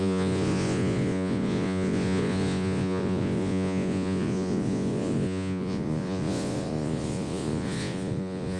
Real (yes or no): no